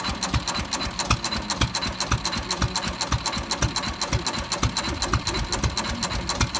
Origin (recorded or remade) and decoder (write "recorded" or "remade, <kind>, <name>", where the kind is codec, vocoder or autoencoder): recorded